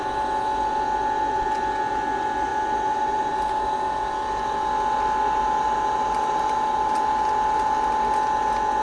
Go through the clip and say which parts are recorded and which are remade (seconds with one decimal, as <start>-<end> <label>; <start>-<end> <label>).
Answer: 0.0-8.8 recorded